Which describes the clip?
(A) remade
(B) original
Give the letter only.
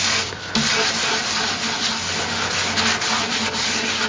B